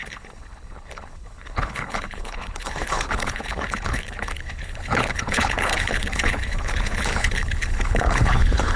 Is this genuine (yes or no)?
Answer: no